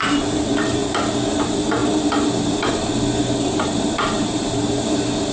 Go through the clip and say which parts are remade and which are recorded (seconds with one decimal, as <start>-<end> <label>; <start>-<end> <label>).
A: 0.0-0.8 remade; 0.8-1.4 recorded; 1.4-5.3 remade

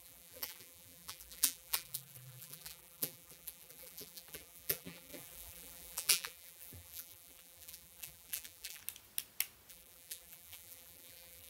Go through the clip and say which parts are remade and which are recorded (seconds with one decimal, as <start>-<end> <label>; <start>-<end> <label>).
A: 0.0-8.8 remade; 8.8-9.7 recorded; 9.7-11.5 remade

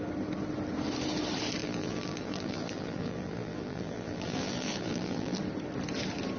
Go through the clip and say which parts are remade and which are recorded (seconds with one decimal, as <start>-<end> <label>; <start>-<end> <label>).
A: 0.0-1.6 recorded; 1.6-5.4 remade; 5.4-6.4 recorded

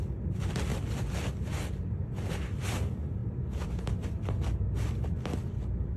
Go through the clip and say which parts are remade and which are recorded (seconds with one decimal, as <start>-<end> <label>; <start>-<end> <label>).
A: 0.0-6.0 recorded

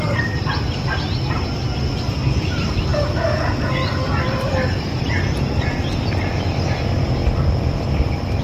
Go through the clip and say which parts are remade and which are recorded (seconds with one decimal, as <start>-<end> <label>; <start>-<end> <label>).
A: 0.0-8.4 recorded

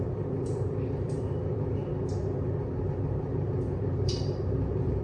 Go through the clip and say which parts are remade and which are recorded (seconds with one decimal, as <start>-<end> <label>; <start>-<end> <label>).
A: 0.0-1.8 remade; 1.8-2.6 recorded; 2.6-5.0 remade

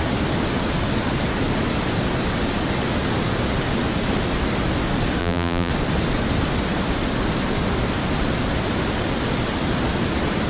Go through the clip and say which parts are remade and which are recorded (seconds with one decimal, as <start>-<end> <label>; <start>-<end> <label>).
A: 0.0-5.2 recorded; 5.2-5.7 remade; 5.7-10.5 recorded

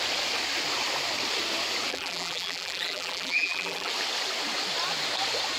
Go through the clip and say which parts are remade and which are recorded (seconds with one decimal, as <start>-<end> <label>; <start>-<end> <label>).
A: 0.0-1.9 recorded; 1.9-3.9 remade; 3.9-5.6 recorded